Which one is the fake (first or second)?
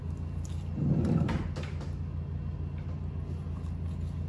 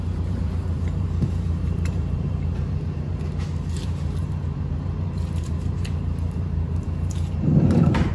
second